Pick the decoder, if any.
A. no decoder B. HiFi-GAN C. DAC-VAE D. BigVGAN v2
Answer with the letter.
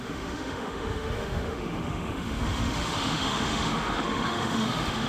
C